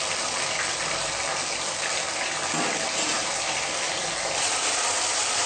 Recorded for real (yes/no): yes